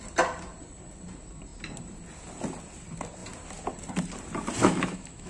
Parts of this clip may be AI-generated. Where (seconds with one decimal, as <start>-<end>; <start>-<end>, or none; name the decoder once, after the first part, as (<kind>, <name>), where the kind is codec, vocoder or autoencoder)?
4.6-5.3 (autoencoder, DAC-VAE)